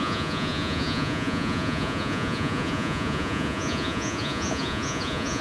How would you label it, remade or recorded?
remade